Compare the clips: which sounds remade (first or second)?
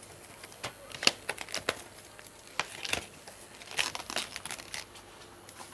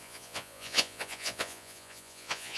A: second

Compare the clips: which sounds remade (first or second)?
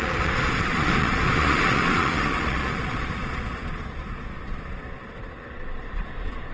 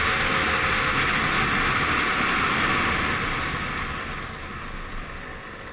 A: first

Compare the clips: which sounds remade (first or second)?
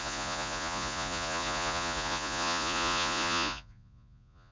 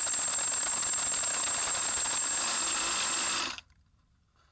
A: first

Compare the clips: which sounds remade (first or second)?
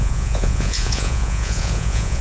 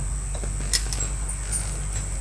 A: first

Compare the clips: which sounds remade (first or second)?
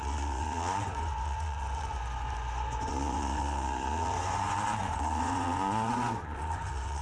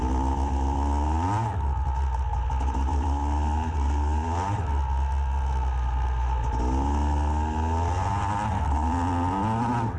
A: first